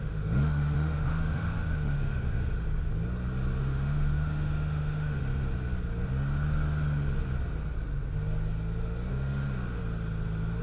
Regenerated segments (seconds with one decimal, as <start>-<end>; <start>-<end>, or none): 0.0-2.4; 3.6-5.2; 9.1-9.8